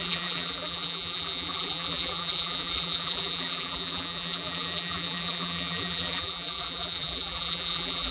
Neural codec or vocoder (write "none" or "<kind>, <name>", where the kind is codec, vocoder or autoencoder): vocoder, BigVGAN v2